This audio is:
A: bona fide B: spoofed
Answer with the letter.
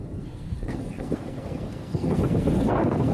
B